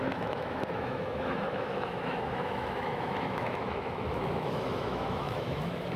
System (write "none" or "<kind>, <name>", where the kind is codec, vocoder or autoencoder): autoencoder, DAC-VAE